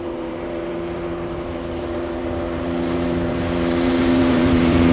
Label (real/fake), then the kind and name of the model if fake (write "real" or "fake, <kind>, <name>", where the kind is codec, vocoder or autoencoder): fake, vocoder, BigVGAN v2